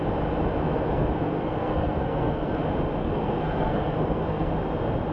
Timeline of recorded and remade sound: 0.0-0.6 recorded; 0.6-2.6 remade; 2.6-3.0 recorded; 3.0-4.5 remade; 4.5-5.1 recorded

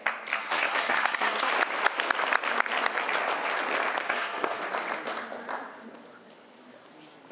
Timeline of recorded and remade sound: 0.0-0.4 recorded; 0.4-1.5 remade; 1.5-4.0 recorded; 4.0-4.6 remade; 4.6-7.3 recorded

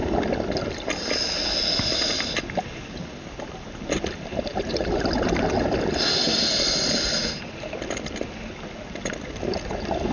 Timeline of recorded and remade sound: 0.0-10.1 recorded

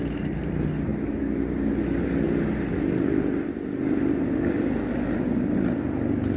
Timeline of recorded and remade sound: 0.0-6.4 recorded

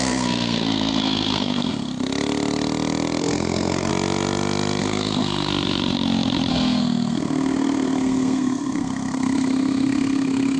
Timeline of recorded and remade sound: 0.0-1.9 remade; 1.9-3.2 recorded; 3.2-3.9 remade; 3.9-4.8 recorded; 4.8-5.5 remade; 5.5-6.5 recorded; 6.5-10.6 remade

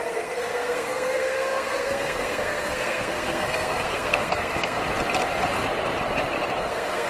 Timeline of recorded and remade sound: 0.0-4.8 remade; 4.8-6.6 recorded; 6.6-7.1 remade